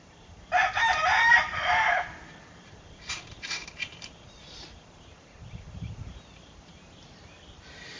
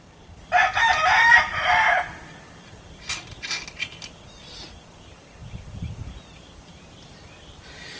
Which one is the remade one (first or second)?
first